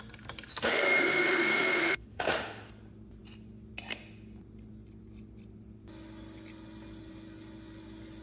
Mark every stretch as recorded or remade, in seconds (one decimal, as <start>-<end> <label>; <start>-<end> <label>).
0.0-0.5 recorded; 0.5-2.7 remade; 2.7-8.2 recorded